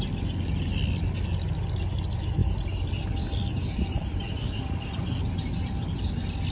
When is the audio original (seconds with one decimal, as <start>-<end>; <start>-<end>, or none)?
0.0-2.4; 6.1-6.5